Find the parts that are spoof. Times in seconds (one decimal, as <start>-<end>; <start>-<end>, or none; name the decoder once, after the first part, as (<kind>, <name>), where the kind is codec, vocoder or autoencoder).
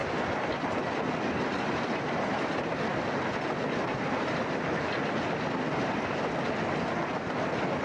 none